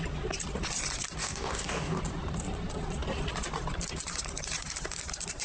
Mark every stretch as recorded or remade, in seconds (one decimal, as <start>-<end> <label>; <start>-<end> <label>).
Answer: 0.0-1.2 recorded; 1.2-2.0 remade; 2.0-5.4 recorded